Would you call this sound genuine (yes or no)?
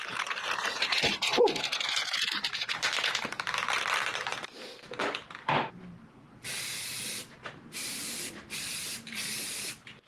no